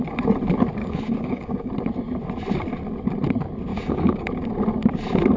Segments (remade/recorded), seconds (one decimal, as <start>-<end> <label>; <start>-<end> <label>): 0.0-0.8 recorded; 0.8-1.7 remade; 1.7-3.7 recorded; 3.7-4.3 remade; 4.3-5.4 recorded